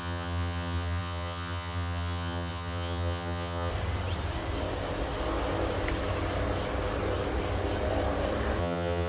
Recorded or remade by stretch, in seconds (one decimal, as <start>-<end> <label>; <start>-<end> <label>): 0.0-3.7 remade; 3.7-8.6 recorded; 8.6-9.1 remade